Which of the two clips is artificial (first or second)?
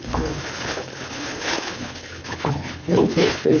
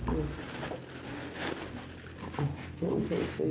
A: first